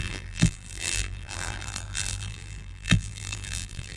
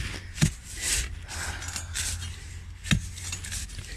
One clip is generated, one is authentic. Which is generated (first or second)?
first